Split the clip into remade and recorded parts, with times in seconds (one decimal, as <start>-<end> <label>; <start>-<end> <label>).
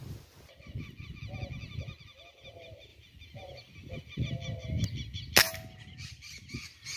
0.0-7.0 recorded